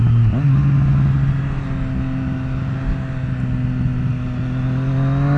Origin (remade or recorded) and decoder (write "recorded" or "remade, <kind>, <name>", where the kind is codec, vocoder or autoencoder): recorded